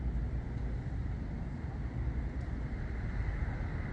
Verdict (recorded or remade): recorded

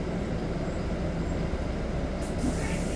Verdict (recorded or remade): recorded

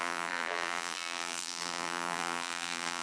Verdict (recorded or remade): remade